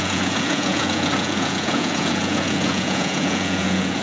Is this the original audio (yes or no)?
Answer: no